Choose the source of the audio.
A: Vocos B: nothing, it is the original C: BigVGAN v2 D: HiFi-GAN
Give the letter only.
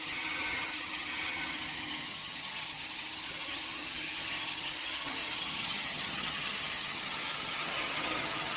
D